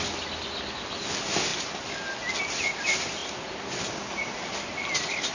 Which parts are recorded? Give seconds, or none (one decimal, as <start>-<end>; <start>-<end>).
0.0-5.3